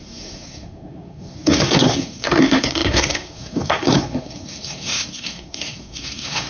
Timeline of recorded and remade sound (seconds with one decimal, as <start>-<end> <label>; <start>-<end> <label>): 0.0-6.5 remade

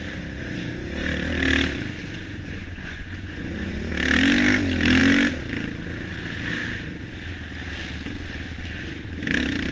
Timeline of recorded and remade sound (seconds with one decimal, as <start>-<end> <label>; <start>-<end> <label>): 0.0-2.0 recorded; 2.0-3.9 remade; 3.9-9.7 recorded

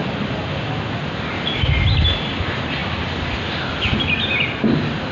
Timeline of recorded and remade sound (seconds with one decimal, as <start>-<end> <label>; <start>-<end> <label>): 0.0-5.1 recorded

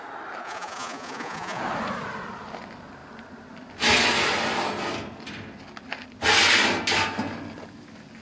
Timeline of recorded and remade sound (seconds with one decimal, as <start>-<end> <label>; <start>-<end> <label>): 0.0-0.4 recorded; 0.4-1.6 remade; 1.6-8.2 recorded

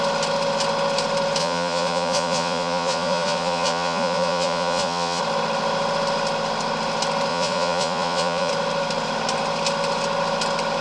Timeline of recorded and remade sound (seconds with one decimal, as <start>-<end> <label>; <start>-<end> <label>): 0.0-1.4 recorded; 1.4-5.2 remade; 5.2-7.3 recorded; 7.3-8.5 remade; 8.5-10.8 recorded

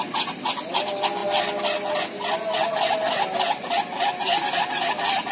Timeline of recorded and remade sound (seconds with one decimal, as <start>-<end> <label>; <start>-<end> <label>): 0.0-5.3 recorded

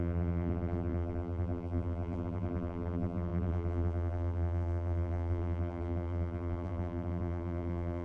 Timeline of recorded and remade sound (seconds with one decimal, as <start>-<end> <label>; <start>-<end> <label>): 0.0-8.0 remade